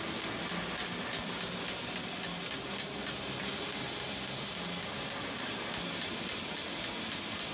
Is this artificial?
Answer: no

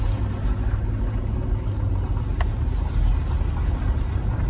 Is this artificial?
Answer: no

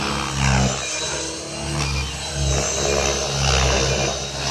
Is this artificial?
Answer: no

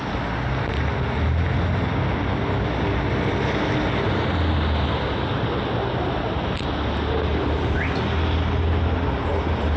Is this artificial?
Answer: no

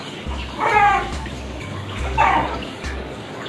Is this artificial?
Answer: yes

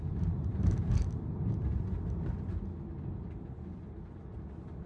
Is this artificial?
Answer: no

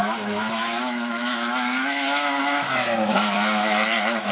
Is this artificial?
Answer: yes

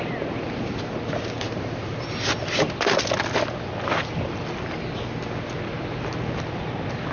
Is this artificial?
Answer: no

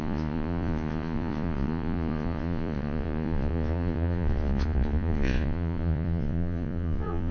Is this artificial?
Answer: yes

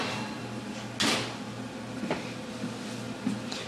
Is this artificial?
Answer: no